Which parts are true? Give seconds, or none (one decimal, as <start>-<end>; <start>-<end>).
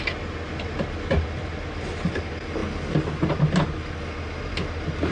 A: 0.0-5.1